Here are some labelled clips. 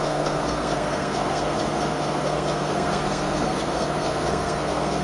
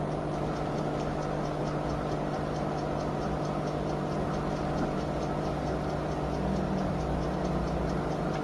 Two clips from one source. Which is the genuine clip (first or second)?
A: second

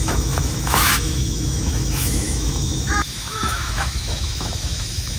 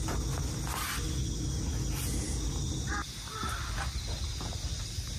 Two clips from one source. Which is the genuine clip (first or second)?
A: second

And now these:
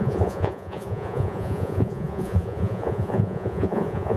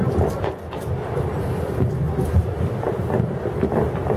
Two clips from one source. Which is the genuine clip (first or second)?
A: second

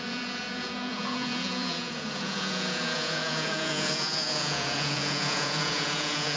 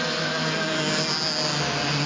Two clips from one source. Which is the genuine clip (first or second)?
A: second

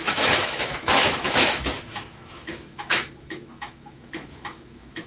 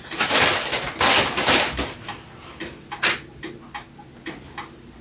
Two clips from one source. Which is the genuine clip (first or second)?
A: second